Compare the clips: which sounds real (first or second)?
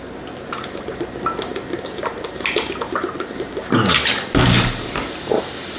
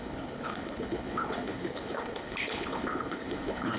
first